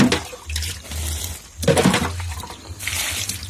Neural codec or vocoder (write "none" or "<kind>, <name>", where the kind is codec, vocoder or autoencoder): none